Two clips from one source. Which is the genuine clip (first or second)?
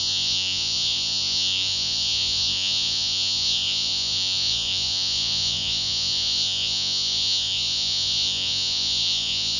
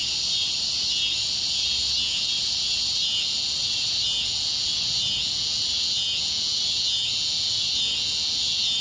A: second